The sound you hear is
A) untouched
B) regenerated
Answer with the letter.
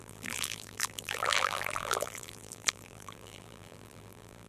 B